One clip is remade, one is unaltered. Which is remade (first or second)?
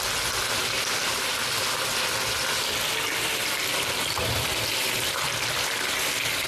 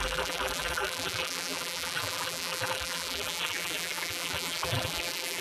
second